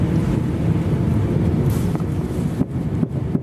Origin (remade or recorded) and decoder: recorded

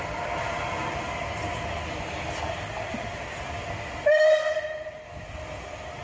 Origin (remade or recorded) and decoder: recorded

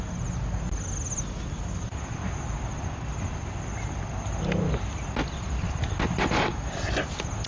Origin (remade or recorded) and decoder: recorded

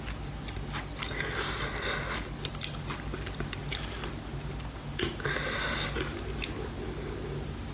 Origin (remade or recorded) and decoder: recorded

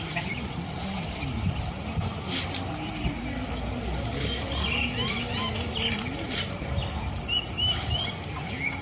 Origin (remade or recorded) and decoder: recorded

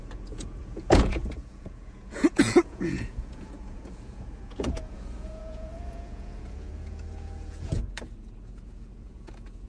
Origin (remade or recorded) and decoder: remade, vocoder, Vocos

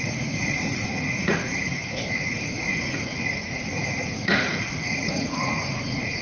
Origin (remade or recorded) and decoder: remade, vocoder, Vocos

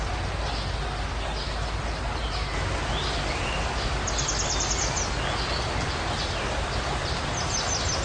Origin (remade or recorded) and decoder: recorded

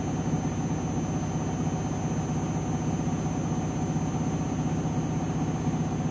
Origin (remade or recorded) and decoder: recorded